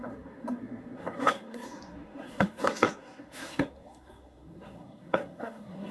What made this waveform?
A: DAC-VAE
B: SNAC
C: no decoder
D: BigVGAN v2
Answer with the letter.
B